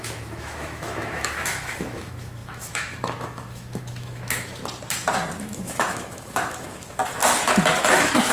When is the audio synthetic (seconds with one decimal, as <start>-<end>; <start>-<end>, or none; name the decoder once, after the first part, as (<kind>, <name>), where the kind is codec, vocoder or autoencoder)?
0.0-4.6 (autoencoder, DAC-VAE); 5.4-7.0; 7.9-8.3